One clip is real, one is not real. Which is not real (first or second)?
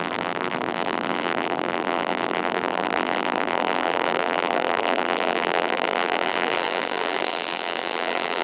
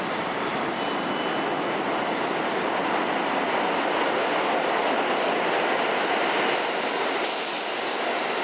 first